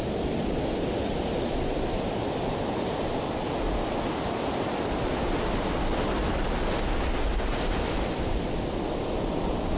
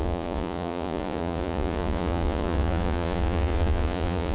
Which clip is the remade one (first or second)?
second